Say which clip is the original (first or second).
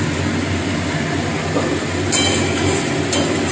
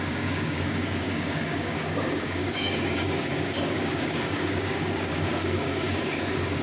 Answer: first